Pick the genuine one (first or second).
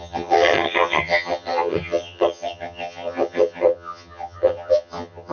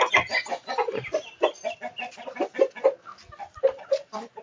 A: second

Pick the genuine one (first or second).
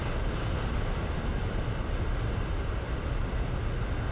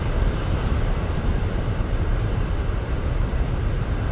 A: first